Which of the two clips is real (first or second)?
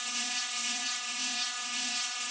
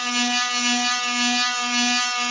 second